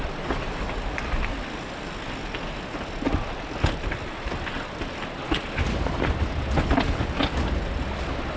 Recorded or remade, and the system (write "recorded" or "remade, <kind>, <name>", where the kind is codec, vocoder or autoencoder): recorded